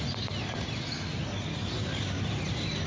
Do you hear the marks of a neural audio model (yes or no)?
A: no